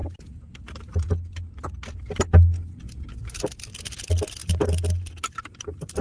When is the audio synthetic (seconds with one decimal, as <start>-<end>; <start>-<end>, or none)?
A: 0.0-1.1; 3.2-3.9; 4.4-6.0